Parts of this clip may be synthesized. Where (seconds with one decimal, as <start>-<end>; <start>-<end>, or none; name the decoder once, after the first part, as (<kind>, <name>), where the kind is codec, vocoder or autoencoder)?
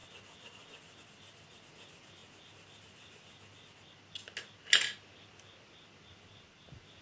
none